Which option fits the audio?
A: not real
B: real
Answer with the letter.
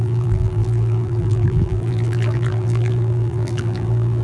A